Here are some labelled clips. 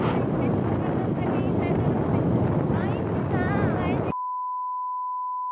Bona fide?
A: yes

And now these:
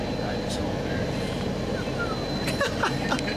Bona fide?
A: yes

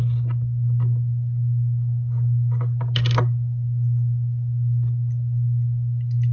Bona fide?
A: yes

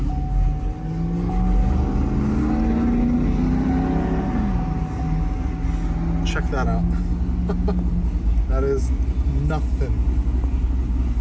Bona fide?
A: yes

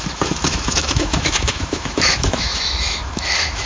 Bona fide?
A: no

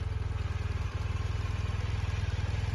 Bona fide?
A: yes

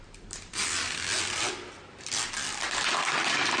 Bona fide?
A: yes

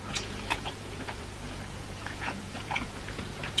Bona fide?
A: no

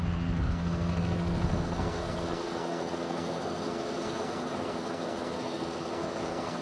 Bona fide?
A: no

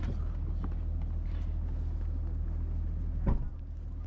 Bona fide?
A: yes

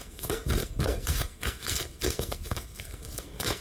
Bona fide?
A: no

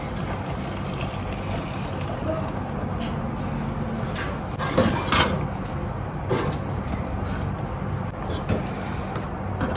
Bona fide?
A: yes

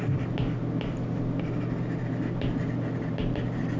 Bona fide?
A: yes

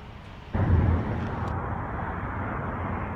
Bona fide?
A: yes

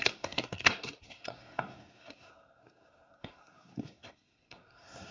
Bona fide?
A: no